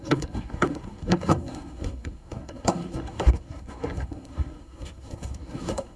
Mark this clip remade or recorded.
remade